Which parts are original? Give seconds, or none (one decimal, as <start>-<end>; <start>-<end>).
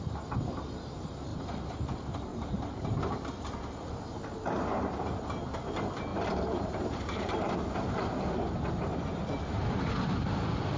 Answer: 0.0-1.3; 1.8-2.3; 3.0-4.7; 5.3-6.1; 7.8-10.8